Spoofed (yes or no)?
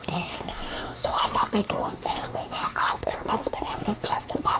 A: yes